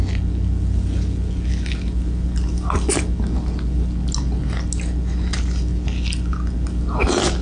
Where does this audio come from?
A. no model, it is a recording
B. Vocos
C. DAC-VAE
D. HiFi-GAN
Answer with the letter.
A